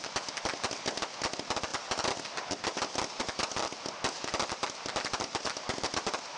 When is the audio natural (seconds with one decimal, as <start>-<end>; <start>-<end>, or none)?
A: 0.0-6.4

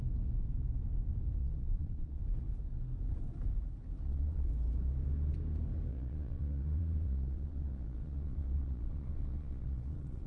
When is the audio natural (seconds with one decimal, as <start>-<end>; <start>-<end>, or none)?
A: 0.0-1.4; 2.2-4.0; 4.5-5.9